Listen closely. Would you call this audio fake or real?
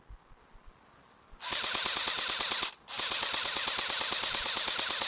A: fake